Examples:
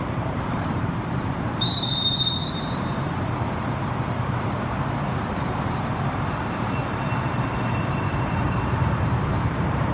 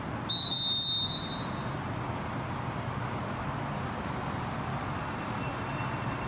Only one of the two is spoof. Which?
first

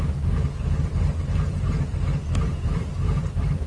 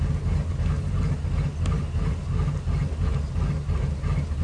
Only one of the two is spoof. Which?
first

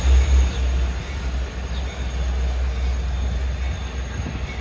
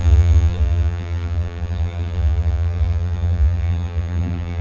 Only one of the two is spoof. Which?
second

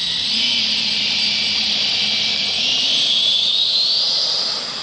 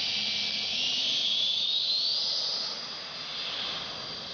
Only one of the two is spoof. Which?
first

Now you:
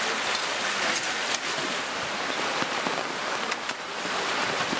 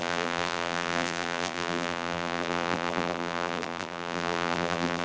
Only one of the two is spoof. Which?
second